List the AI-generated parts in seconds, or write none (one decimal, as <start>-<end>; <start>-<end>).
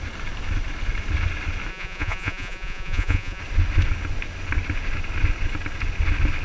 1.7-3.4